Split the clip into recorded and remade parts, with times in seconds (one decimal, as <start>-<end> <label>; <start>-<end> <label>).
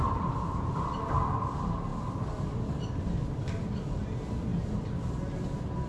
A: 0.0-5.9 recorded